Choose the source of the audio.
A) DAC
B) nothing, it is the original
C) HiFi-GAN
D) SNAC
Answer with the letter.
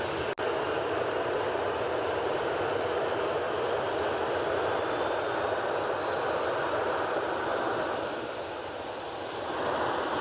B